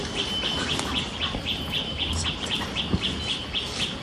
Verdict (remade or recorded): recorded